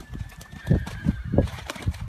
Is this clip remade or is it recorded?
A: remade